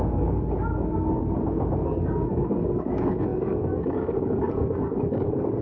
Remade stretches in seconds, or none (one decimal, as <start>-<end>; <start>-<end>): 0.0-5.6